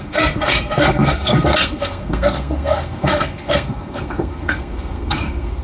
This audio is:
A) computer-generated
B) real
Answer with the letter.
A